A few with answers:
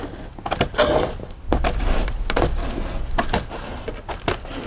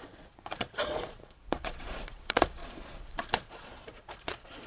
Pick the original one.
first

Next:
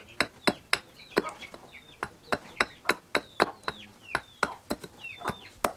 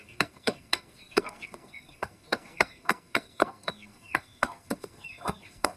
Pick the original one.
first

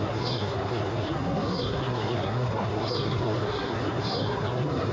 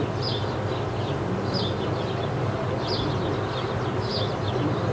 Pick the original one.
second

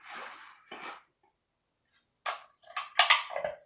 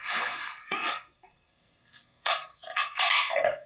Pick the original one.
first